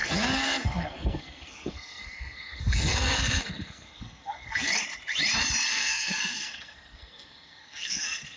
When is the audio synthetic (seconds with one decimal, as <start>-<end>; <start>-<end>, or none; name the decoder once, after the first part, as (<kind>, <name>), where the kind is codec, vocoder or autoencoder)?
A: 0.0-4.7 (codec, SNAC); 5.7-8.4